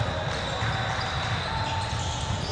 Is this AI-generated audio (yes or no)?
no